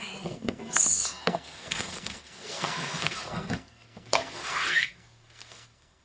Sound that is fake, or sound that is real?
fake